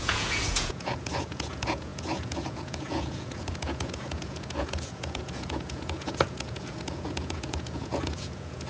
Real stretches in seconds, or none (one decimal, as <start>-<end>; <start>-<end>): none